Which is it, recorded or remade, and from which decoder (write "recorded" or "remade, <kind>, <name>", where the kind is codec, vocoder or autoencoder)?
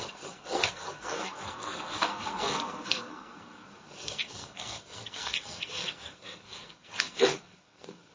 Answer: remade, codec, SNAC